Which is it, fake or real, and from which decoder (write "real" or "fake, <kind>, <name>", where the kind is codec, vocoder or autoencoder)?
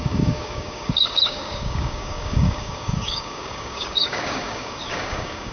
fake, codec, DAC